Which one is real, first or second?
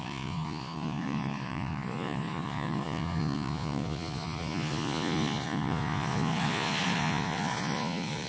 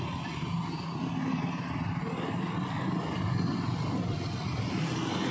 second